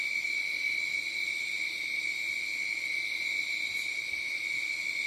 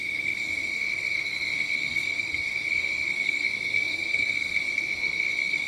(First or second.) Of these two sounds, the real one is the first